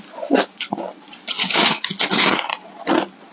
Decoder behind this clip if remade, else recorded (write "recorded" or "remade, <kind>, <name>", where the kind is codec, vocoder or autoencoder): recorded